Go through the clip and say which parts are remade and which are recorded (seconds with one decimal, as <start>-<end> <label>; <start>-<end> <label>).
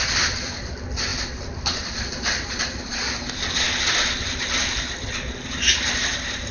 0.0-6.5 recorded